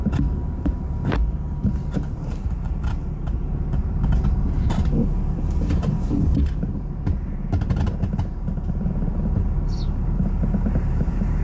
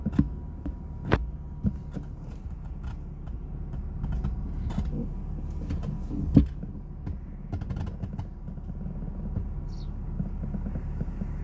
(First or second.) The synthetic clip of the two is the first